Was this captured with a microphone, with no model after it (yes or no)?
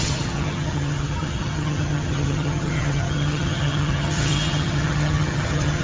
no